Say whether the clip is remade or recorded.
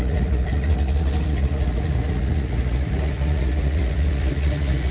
remade